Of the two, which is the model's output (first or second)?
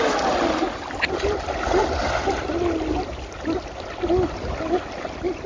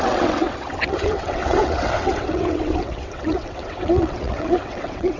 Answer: second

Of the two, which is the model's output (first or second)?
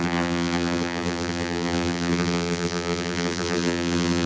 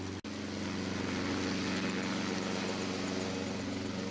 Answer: first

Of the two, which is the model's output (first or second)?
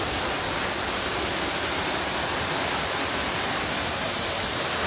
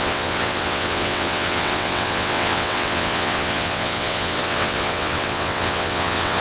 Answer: second